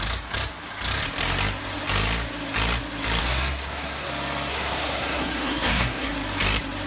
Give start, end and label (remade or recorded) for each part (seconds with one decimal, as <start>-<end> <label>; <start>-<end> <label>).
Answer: 0.0-3.2 recorded; 3.2-4.1 remade; 4.1-4.5 recorded; 4.5-6.1 remade; 6.1-6.9 recorded